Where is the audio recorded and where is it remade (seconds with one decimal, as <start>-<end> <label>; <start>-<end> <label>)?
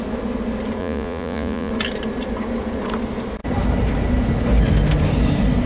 0.0-0.8 recorded; 0.8-1.7 remade; 1.7-5.7 recorded